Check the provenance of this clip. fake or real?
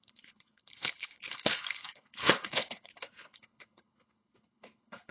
fake